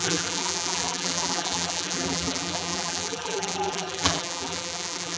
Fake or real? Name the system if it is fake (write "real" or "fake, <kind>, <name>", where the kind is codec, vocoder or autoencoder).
fake, vocoder, BigVGAN v2